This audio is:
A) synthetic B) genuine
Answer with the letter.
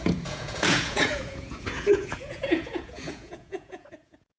A